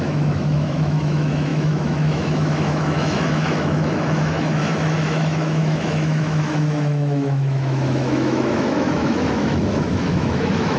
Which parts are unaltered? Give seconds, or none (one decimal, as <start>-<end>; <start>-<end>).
none